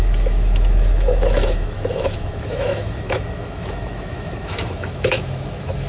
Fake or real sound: fake